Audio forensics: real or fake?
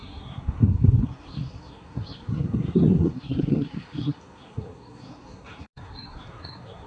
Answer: fake